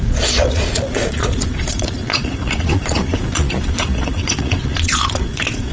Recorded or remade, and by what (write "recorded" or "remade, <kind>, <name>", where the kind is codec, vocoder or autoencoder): remade, vocoder, Vocos